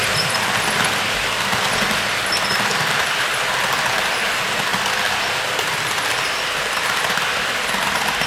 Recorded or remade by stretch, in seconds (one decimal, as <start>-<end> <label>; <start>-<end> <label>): 0.0-8.3 recorded